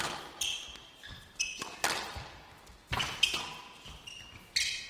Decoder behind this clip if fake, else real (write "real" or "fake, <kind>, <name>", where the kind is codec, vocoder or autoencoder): real